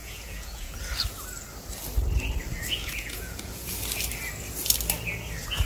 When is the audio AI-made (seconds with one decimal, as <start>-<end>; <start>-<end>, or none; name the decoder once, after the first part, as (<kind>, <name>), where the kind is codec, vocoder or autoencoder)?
0.0-0.8 (vocoder, Vocos); 2.8-3.7